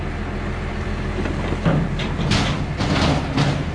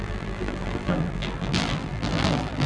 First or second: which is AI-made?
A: second